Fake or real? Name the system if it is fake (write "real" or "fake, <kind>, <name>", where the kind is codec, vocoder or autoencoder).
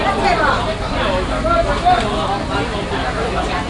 real